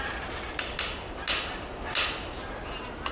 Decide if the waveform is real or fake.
real